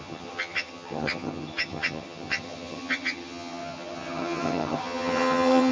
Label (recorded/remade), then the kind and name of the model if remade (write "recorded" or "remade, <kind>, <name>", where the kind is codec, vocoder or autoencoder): remade, vocoder, HiFi-GAN